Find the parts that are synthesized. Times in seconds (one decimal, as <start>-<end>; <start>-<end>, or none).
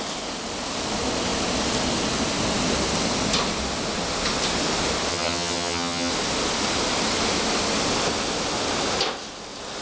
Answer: 5.1-6.1